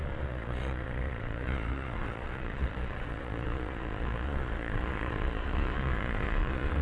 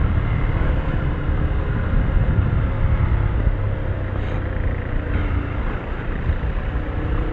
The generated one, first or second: first